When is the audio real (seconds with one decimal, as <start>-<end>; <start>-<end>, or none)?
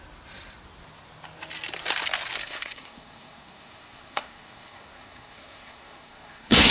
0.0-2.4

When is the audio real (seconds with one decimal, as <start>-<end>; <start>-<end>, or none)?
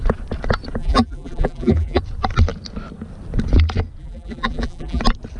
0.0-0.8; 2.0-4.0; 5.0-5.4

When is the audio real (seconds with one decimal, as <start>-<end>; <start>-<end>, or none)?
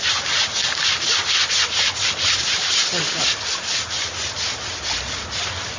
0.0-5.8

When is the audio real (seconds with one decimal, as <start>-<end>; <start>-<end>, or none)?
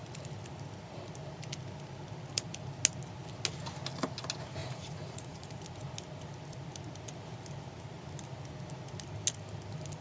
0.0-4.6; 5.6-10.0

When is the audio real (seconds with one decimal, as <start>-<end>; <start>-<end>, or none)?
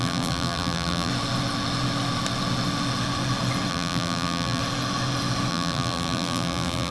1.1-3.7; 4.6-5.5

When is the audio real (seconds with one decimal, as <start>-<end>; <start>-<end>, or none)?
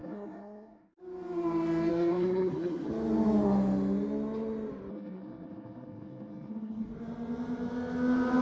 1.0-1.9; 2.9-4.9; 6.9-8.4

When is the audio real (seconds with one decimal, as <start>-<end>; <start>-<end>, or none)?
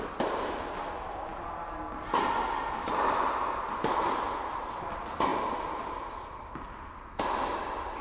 0.0-8.0